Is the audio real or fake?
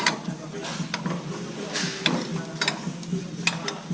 real